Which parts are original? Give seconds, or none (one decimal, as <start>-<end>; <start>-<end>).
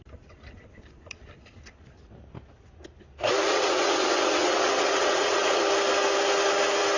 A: 0.0-3.5; 5.6-7.0